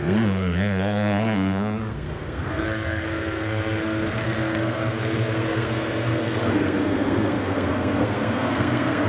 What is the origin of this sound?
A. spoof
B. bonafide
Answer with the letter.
A